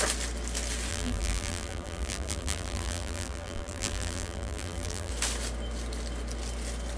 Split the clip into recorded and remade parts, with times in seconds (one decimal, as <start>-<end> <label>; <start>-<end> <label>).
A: 0.0-0.9 recorded; 0.9-5.1 remade; 5.1-7.0 recorded